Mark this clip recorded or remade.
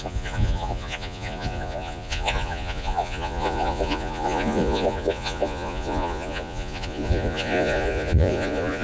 remade